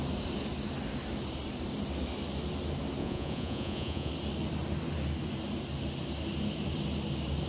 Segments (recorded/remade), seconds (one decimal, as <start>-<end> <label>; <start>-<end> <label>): 0.0-3.0 recorded; 3.0-4.1 remade; 4.1-7.5 recorded